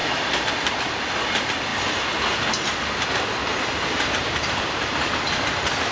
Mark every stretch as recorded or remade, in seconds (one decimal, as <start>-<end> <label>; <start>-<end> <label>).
0.0-0.9 remade; 0.9-3.5 recorded; 3.5-5.1 remade; 5.1-5.9 recorded